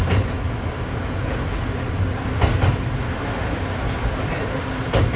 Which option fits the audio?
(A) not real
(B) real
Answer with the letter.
B